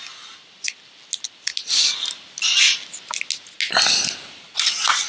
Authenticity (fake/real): real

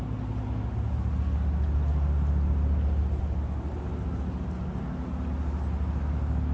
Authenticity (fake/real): real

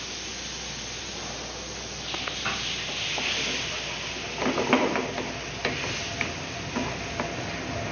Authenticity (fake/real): real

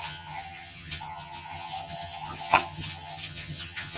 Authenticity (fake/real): fake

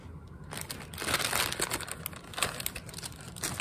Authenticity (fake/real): real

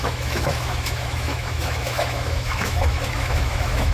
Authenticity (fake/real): fake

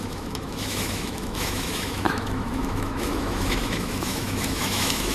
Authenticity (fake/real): fake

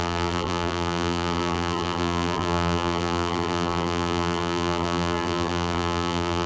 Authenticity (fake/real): fake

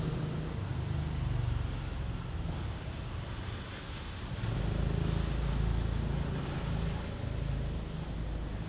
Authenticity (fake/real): real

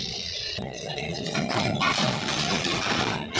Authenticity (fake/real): fake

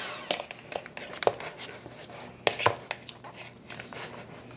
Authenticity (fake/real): real